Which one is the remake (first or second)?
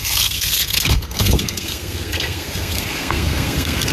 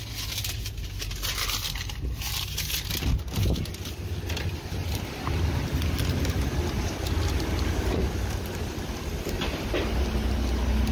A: first